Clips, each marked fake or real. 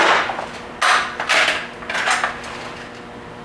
real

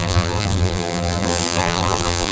fake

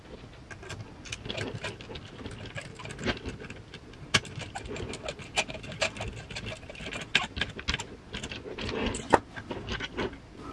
real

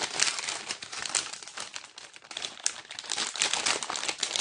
real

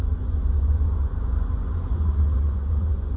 fake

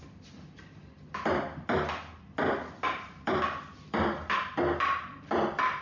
real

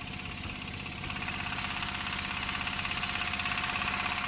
real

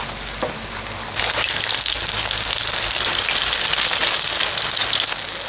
real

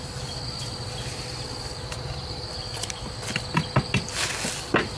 real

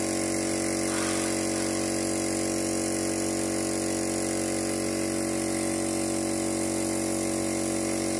real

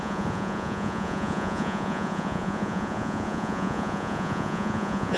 fake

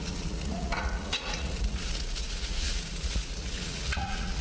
fake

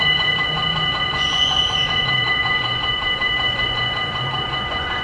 fake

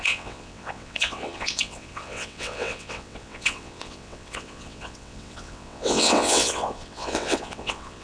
fake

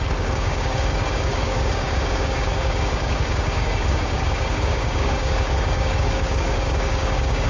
fake